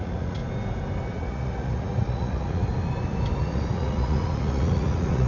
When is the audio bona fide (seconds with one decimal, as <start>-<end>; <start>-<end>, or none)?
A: 0.4-1.1; 2.7-3.4